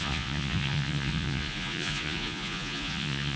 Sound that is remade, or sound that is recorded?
remade